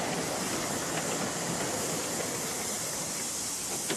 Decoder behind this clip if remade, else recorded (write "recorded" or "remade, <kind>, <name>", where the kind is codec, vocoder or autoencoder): recorded